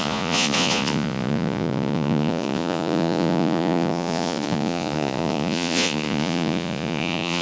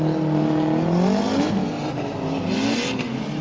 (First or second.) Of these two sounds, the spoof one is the first